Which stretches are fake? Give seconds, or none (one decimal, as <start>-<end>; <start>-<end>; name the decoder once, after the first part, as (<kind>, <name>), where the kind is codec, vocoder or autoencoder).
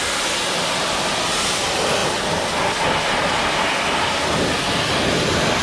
none